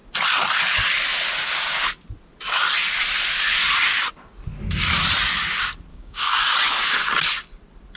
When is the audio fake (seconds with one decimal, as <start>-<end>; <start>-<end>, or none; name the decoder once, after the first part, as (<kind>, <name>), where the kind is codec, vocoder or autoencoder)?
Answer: 5.9-6.4 (codec, DAC)